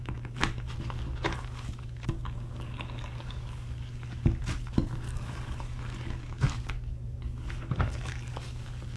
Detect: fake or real fake